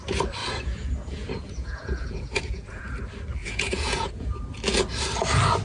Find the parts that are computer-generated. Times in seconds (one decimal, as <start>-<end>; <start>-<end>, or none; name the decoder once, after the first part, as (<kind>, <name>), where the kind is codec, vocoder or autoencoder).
0.4-2.9 (vocoder, Vocos); 3.4-4.4